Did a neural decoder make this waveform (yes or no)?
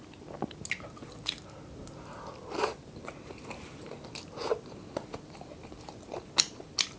no